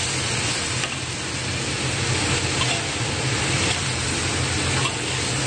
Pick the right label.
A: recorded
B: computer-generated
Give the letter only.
A